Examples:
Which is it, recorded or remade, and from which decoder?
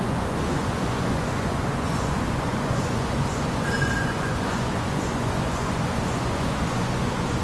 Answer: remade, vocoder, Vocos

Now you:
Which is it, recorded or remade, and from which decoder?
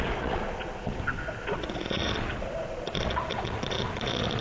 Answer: remade, vocoder, Vocos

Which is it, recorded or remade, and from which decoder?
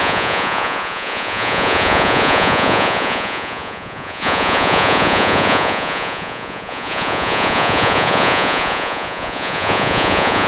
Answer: remade, vocoder, Vocos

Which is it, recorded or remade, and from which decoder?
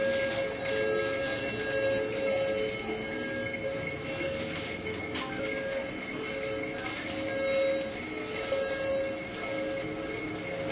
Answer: recorded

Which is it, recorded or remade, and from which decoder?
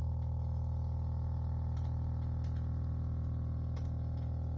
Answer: recorded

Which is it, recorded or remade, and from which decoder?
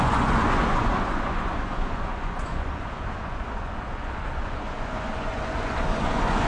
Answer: remade, vocoder, Vocos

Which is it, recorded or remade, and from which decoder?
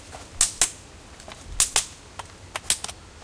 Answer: recorded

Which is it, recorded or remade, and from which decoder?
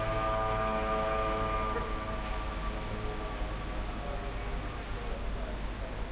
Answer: recorded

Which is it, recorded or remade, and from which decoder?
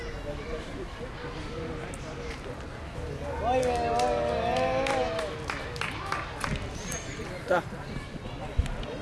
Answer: recorded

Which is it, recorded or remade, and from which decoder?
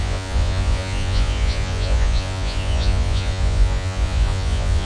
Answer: remade, vocoder, Vocos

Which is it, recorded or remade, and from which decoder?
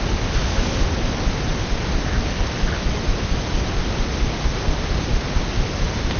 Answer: recorded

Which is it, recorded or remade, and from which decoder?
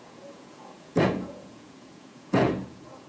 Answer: remade, vocoder, Vocos